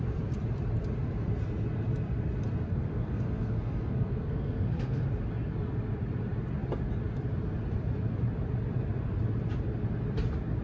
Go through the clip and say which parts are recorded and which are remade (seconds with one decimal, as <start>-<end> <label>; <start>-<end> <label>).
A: 0.0-2.7 recorded; 2.7-5.1 remade; 5.1-10.6 recorded